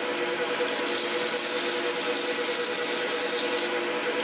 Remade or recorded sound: recorded